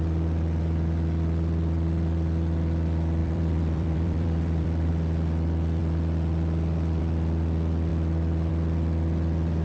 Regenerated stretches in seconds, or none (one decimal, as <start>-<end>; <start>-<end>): 3.2-4.9